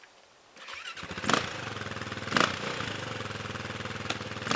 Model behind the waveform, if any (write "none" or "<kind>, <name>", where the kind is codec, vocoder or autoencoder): none